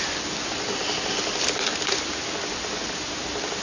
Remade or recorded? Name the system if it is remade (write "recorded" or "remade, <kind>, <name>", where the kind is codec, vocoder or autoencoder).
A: recorded